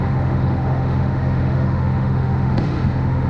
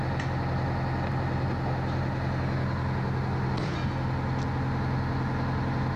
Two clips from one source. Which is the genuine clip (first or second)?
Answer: second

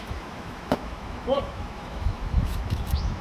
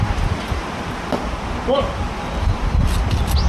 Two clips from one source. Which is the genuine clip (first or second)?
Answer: second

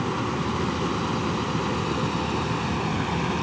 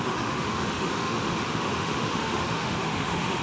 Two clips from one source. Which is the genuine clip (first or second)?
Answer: first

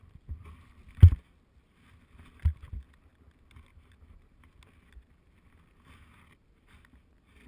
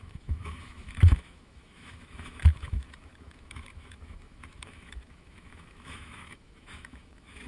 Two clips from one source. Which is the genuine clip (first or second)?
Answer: first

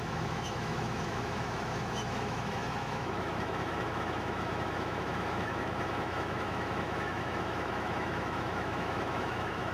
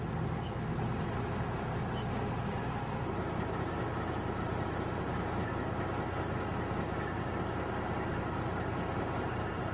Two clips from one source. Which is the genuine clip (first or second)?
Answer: second